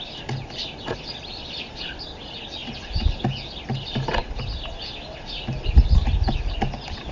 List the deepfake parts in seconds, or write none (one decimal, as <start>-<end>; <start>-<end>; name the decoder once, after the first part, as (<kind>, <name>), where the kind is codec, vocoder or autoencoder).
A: none